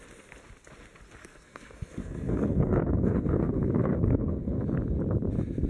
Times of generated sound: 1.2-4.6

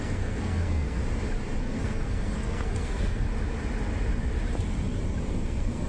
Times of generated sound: 0.0-1.0; 1.6-3.3; 5.3-5.9

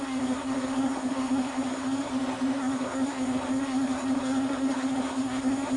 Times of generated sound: 0.0-2.1; 2.6-5.8

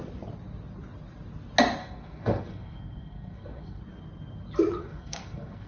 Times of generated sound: 1.8-3.8; 4.8-5.7